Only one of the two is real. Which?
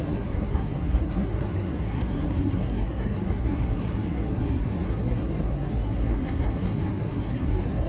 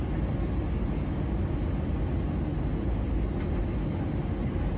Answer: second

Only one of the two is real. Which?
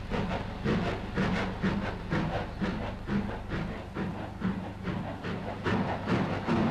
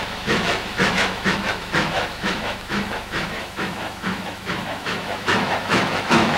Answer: first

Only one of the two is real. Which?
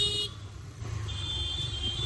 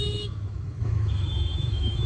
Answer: first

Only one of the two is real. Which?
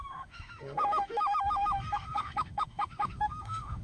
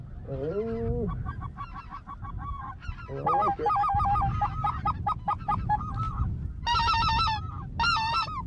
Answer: second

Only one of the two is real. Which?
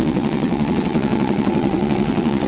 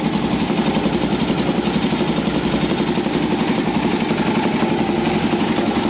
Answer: second